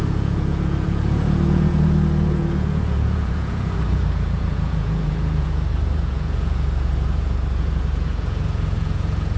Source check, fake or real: fake